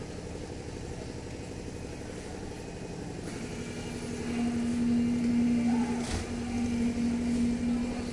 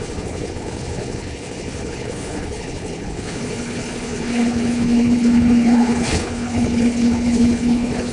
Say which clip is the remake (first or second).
second